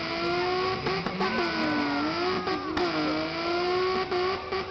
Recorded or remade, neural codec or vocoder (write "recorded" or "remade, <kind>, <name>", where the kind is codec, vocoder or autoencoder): recorded